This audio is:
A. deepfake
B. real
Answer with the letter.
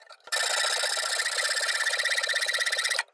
B